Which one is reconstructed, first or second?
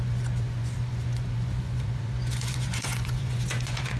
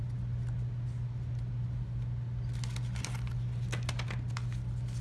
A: first